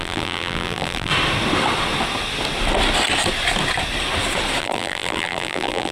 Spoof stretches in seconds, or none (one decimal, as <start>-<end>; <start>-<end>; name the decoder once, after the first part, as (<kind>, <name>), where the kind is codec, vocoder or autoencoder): 0.0-1.1 (vocoder, BigVGAN v2); 4.6-5.9